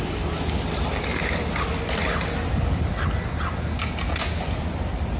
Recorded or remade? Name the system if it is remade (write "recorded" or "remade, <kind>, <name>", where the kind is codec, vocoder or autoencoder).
recorded